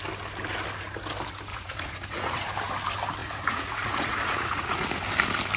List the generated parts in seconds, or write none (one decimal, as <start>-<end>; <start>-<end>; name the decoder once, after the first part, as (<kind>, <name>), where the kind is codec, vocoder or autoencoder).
1.5-2.5 (vocoder, Vocos); 3.2-5.0